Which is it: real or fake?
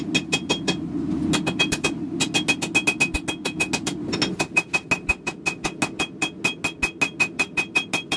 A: real